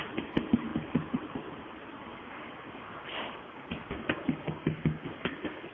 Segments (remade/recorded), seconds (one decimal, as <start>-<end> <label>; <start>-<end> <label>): 0.0-2.1 recorded; 2.1-5.7 remade